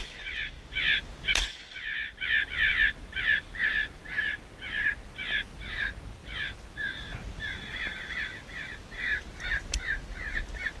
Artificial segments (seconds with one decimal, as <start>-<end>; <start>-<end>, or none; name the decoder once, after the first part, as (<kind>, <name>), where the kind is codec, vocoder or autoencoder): none